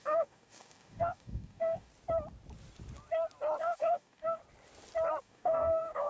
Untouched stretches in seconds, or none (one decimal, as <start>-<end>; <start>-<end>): 1.9-3.6; 4.4-5.2